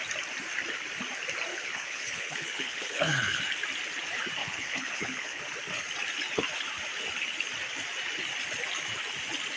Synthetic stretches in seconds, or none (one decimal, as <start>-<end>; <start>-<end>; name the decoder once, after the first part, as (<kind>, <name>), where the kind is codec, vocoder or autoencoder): 1.5-3.4 (codec, HILCodec); 4.4-5.4